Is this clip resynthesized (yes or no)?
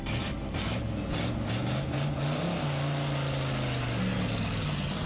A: no